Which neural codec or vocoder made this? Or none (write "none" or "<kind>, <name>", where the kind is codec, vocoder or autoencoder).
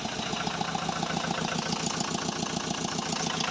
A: none